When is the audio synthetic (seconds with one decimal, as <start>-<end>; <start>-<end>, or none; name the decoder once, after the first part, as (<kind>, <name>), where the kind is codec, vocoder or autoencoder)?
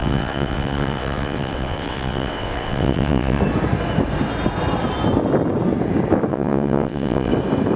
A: 0.0-3.4 (vocoder, WaveNeXt); 6.3-7.3